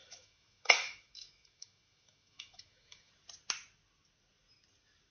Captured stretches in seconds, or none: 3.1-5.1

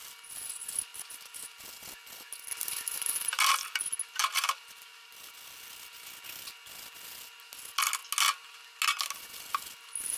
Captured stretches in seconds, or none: 0.0-0.9; 1.6-2.5; 3.4-4.2; 5.1-10.2

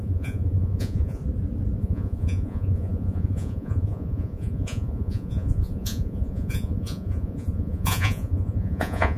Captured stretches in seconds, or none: 1.2-1.8

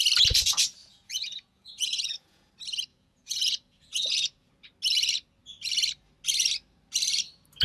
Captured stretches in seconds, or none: 0.0-0.8; 2.5-2.9; 4.5-7.6

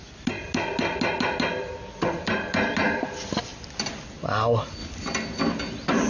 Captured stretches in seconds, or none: 0.0-6.1

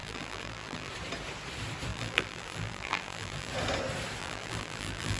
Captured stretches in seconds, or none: 0.9-1.9; 3.5-4.2